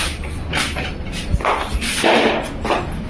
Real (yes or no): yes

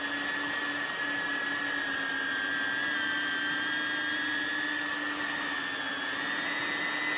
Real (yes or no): yes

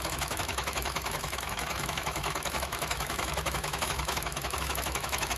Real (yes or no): no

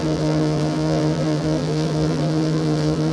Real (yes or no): no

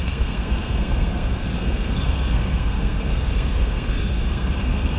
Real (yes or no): no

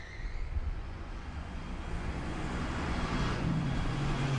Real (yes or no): no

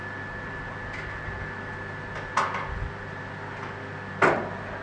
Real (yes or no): yes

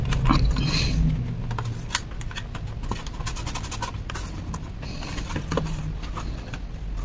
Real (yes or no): yes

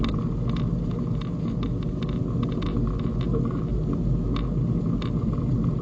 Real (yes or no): yes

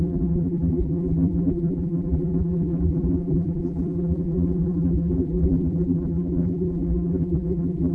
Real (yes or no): no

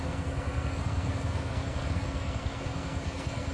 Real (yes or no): no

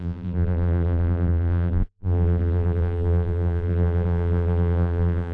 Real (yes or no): no